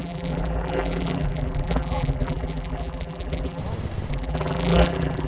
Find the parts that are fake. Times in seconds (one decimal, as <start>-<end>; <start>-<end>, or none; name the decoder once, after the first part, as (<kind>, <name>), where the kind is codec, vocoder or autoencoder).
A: 0.0-3.6 (vocoder, BigVGAN v2); 4.1-5.3